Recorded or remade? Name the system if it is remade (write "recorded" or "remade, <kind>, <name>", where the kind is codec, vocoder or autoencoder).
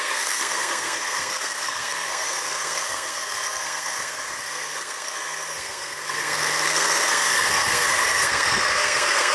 remade, codec, SNAC